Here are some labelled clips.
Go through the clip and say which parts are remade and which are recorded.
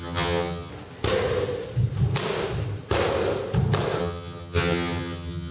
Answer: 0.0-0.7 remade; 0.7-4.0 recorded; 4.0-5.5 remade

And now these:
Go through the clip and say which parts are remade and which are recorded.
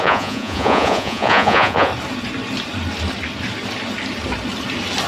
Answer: 0.0-1.9 remade; 1.9-5.1 recorded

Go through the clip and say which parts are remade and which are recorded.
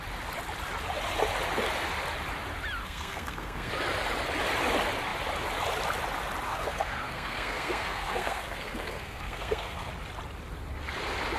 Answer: 0.0-2.8 recorded; 2.8-3.7 remade; 3.7-6.5 recorded; 6.5-9.9 remade; 9.9-11.4 recorded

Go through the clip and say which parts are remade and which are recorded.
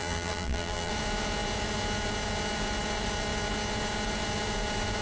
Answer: 0.0-0.9 remade; 0.9-5.0 recorded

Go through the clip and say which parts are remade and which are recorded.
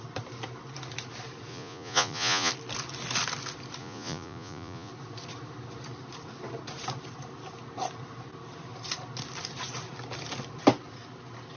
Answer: 0.0-1.5 recorded; 1.5-2.5 remade; 2.5-3.8 recorded; 3.8-4.9 remade; 4.9-11.6 recorded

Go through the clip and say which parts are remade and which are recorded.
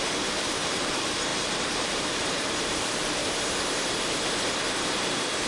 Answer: 0.0-3.2 remade; 3.2-5.1 recorded; 5.1-5.5 remade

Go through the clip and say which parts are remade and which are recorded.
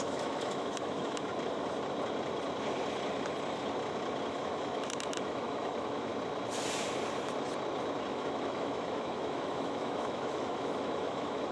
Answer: 0.0-1.3 remade; 1.3-4.3 recorded; 4.3-6.1 remade; 6.1-8.1 recorded; 8.1-11.5 remade